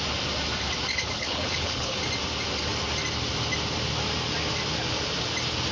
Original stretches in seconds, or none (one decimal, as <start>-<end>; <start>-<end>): 0.0-0.9; 2.0-5.7